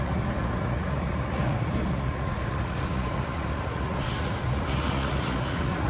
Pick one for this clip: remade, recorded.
remade